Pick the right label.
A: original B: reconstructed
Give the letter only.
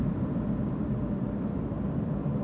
A